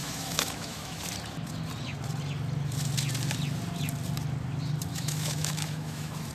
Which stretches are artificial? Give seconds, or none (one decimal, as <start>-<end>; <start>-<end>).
0.0-1.1; 4.9-6.3